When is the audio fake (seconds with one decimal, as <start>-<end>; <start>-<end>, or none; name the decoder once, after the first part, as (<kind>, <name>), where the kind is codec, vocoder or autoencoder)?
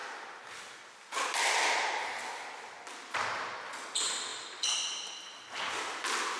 none